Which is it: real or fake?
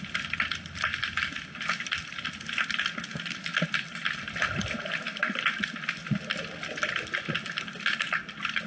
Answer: real